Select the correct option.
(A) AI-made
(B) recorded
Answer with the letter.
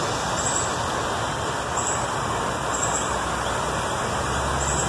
B